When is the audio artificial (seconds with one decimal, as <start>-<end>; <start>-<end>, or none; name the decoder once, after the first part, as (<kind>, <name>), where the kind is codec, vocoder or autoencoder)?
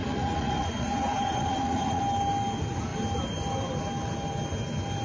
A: 0.0-2.0 (vocoder, Vocos)